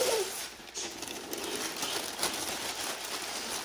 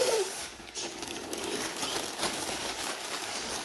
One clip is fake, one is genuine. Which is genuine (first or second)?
first